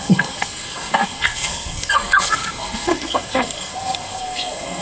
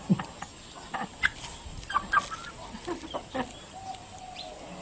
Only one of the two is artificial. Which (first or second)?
first